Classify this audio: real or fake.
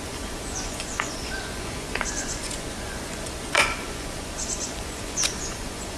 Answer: fake